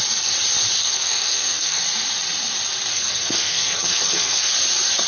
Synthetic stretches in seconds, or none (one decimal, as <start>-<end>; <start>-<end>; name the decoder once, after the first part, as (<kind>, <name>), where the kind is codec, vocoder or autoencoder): 0.8-1.8 (codec, SNAC); 2.9-4.5